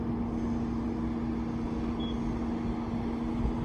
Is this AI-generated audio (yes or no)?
no